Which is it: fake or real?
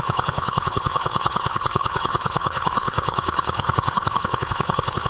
fake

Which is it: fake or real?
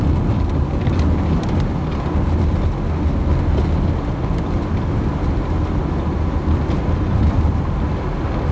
real